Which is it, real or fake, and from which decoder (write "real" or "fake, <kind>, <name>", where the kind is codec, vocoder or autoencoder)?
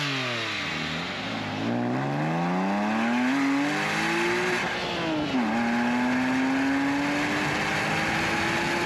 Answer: real